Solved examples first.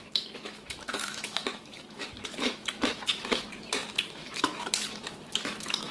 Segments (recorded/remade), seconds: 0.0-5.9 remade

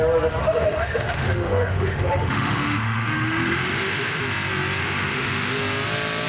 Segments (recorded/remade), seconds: 0.0-0.4 recorded; 0.4-4.2 remade; 4.2-4.8 recorded; 4.8-5.6 remade; 5.6-6.3 recorded

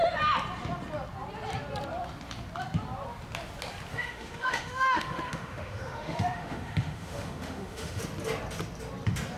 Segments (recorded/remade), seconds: 0.0-3.9 recorded; 3.9-8.0 remade; 8.0-9.4 recorded

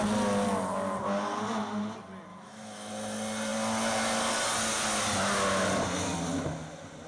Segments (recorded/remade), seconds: 0.0-2.3 recorded; 2.3-2.9 remade; 2.9-7.1 recorded

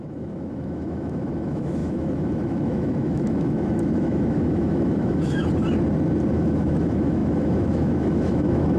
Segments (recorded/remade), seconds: 0.0-5.4 remade; 5.4-6.3 recorded; 6.3-8.8 remade

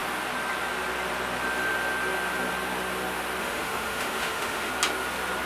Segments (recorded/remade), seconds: 0.0-3.4 recorded; 3.4-4.7 remade; 4.7-5.5 recorded

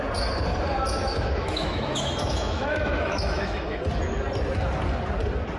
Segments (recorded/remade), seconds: 0.0-1.0 recorded; 1.0-3.8 remade; 3.8-5.6 recorded